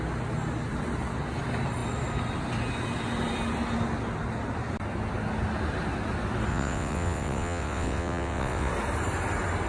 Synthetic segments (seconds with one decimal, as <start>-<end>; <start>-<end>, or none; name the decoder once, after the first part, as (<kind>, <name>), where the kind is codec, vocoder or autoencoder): 6.5-8.7 (vocoder, WaveNeXt)